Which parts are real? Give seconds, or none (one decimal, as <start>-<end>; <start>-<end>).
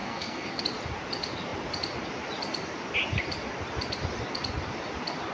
0.6-5.3